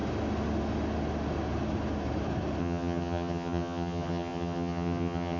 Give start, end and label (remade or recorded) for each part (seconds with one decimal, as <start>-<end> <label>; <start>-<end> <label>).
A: 0.0-2.6 recorded; 2.6-5.4 remade